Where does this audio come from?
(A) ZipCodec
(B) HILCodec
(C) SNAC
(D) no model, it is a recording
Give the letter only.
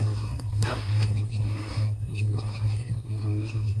C